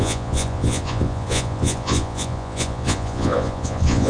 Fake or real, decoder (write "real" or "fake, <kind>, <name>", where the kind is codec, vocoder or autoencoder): fake, vocoder, Vocos